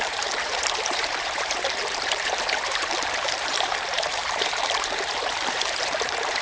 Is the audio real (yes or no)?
no